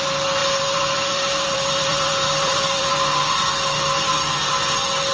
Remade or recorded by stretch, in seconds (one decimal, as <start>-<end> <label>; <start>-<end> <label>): 0.0-0.4 recorded; 0.4-3.5 remade; 3.5-5.1 recorded